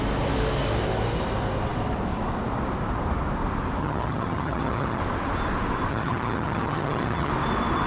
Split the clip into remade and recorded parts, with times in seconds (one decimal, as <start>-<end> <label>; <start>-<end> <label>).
0.0-3.8 recorded; 3.8-5.0 remade; 5.0-5.9 recorded; 5.9-7.3 remade; 7.3-7.9 recorded